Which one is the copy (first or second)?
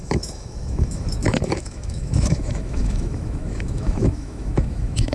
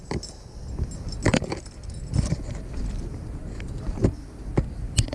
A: first